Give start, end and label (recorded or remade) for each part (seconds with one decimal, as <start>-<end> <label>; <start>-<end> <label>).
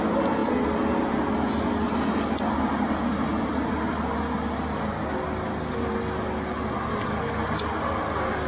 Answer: 0.0-8.5 recorded